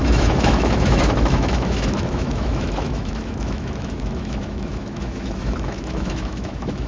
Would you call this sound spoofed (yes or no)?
yes